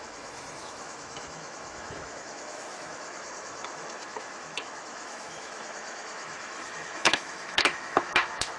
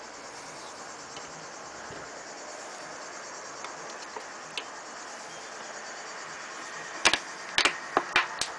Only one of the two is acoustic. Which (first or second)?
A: second